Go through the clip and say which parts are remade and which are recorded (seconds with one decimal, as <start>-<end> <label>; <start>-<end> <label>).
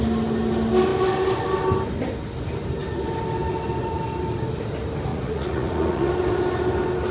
0.0-5.1 recorded; 5.1-6.1 remade; 6.1-7.1 recorded